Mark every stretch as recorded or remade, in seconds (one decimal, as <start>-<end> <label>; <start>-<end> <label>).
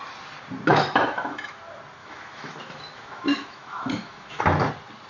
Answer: 0.0-0.7 recorded; 0.7-1.6 remade; 1.6-2.0 recorded; 2.0-4.4 remade; 4.4-5.1 recorded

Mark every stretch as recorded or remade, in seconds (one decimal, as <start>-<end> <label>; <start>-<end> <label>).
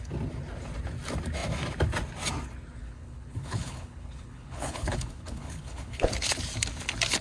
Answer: 0.0-2.8 recorded; 2.8-6.1 remade; 6.1-7.2 recorded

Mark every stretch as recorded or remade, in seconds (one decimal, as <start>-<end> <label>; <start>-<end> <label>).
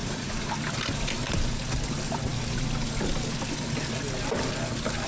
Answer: 0.0-0.5 remade; 0.5-5.1 recorded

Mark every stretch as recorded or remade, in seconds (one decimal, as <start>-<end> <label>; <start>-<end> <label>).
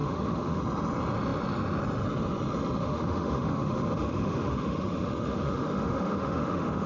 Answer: 0.0-0.6 remade; 0.6-2.8 recorded; 2.8-6.9 remade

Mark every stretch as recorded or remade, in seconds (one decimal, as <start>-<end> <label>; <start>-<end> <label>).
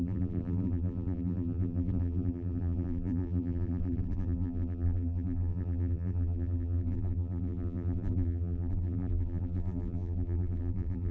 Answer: 0.0-11.1 remade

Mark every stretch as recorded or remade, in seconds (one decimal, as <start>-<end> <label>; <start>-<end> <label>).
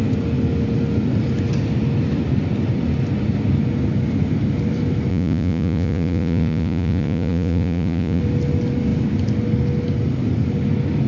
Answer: 0.0-5.1 recorded; 5.1-8.2 remade; 8.2-11.1 recorded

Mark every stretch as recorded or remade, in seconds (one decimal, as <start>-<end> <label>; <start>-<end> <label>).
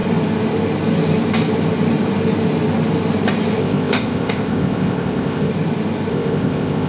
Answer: 0.0-3.6 recorded; 3.6-5.5 remade; 5.5-6.1 recorded; 6.1-6.9 remade